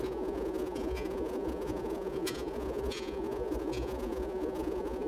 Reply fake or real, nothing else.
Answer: fake